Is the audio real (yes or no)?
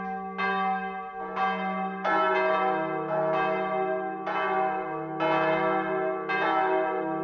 yes